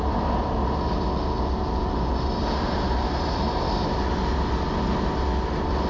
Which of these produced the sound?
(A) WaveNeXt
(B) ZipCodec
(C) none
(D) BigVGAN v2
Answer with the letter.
C